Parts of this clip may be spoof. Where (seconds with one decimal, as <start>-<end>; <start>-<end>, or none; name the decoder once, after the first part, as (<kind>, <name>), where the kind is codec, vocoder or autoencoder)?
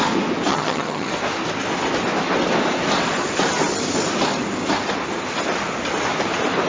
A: 0.5-1.1 (vocoder, HiFi-GAN)